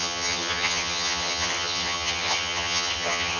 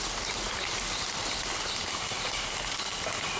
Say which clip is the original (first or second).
second